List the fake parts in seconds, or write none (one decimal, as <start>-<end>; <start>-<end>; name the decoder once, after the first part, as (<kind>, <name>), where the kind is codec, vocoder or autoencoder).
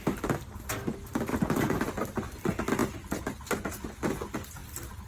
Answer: none